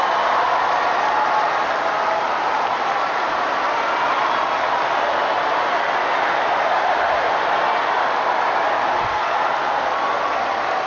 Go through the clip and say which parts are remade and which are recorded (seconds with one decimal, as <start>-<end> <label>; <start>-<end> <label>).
0.0-10.9 recorded

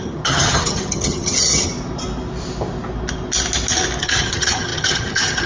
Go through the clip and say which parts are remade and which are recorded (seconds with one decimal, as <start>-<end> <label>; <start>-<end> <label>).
0.0-1.7 remade; 1.7-4.0 recorded; 4.0-5.5 remade

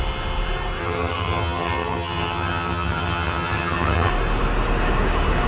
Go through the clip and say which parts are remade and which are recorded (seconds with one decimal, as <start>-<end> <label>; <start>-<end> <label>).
0.0-0.8 recorded; 0.8-4.1 remade; 4.1-5.5 recorded

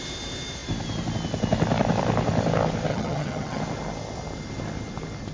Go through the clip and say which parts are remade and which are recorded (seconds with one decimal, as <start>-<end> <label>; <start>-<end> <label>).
0.0-2.9 recorded; 2.9-3.6 remade; 3.6-5.3 recorded